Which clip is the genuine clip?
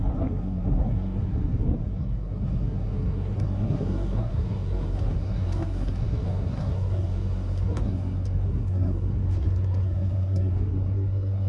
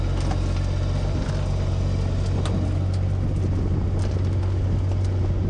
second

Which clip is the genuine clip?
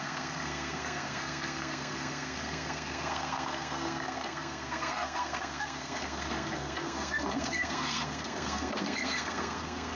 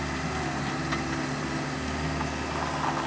second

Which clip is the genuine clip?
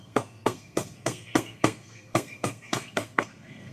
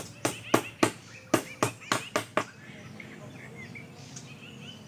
second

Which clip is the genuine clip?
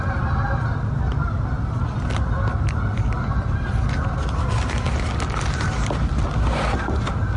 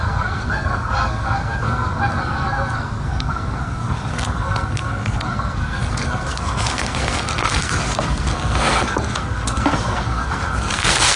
first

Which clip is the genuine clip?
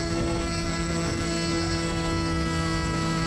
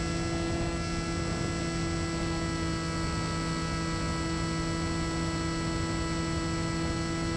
second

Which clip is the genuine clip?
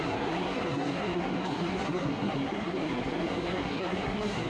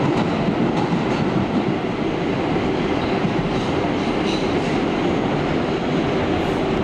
second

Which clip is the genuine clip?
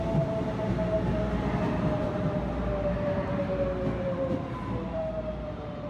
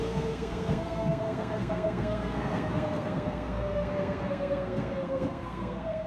first